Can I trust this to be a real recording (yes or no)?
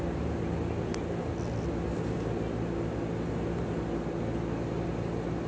yes